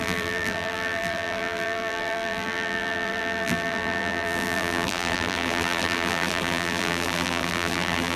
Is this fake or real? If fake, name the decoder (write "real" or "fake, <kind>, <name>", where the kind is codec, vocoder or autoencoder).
fake, vocoder, BigVGAN v2